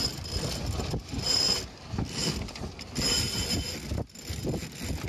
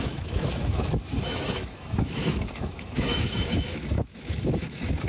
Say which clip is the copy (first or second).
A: second